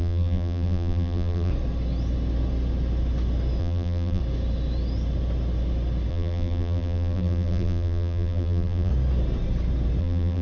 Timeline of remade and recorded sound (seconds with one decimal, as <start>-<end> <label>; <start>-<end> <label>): 0.0-1.5 remade; 1.5-3.6 recorded; 3.6-4.2 remade; 4.2-6.1 recorded; 6.1-8.9 remade; 8.9-10.0 recorded; 10.0-10.4 remade